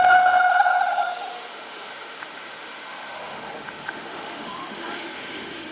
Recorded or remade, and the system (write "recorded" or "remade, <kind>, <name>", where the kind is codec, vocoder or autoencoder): remade, autoencoder, DAC-VAE